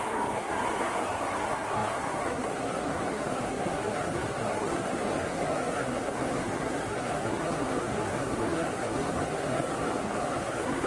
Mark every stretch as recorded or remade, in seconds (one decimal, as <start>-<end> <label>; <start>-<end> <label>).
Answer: 0.0-10.9 remade